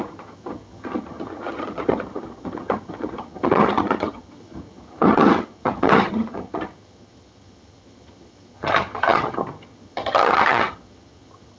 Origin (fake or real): fake